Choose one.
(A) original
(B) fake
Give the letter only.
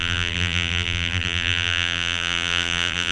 B